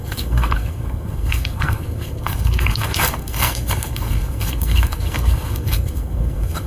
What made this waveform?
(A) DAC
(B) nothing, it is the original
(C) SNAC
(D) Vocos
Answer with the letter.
C